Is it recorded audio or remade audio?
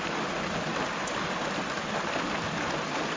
recorded